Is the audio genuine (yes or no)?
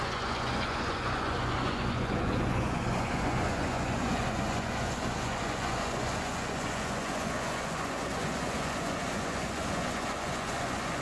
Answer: no